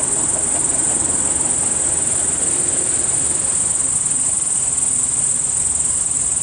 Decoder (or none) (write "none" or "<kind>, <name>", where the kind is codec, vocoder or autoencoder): none